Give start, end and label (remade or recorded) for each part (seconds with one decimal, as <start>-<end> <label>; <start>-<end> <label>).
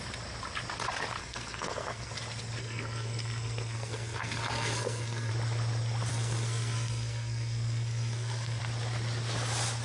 0.0-1.2 recorded; 1.2-2.1 remade; 2.1-2.6 recorded; 2.6-5.3 remade; 5.3-6.1 recorded; 6.1-8.6 remade; 8.6-9.8 recorded